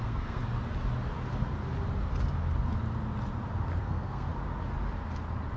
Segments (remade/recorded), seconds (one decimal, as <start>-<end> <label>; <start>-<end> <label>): 0.0-0.4 remade; 0.4-3.8 recorded; 3.8-4.3 remade; 4.3-5.6 recorded